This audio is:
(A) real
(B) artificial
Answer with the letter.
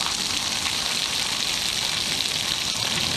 A